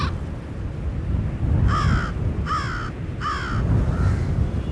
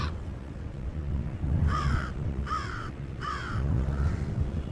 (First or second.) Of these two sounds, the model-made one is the second